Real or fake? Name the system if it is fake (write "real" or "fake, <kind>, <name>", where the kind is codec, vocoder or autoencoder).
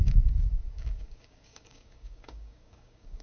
fake, codec, DAC